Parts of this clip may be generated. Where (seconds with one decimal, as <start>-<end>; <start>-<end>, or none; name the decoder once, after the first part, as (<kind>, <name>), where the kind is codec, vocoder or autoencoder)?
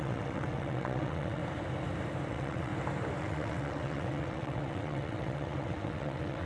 0.0-1.4 (vocoder, WaveNeXt); 2.3-2.7; 3.2-6.5